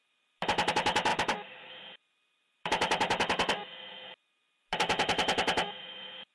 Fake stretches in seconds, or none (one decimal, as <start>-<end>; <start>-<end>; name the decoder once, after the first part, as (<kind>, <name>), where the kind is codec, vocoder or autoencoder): 0.0-3.6 (vocoder, BigVGAN v2); 4.6-6.3